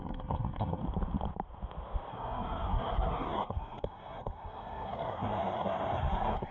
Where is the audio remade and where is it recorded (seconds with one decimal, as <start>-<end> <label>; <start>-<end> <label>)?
0.0-0.8 remade; 0.8-2.1 recorded; 2.1-6.5 remade